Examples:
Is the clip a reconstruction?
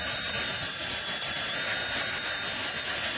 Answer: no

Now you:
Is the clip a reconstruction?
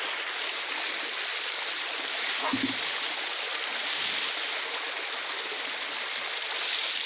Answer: no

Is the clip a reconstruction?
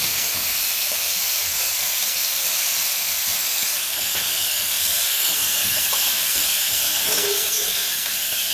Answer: yes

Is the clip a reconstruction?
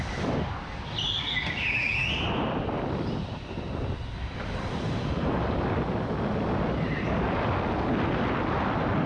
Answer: no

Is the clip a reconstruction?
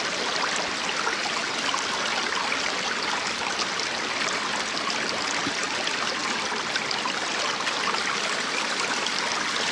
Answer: no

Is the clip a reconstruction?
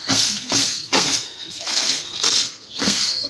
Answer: yes